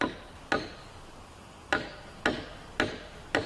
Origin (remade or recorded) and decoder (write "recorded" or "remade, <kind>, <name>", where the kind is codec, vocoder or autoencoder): recorded